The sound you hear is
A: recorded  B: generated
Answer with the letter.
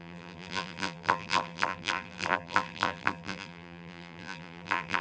B